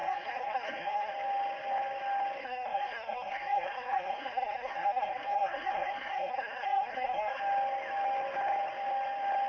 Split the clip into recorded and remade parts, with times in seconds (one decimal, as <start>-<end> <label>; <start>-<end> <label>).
0.0-1.1 remade; 1.1-2.4 recorded; 2.4-7.4 remade; 7.4-9.5 recorded